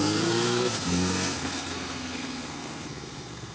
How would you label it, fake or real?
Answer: fake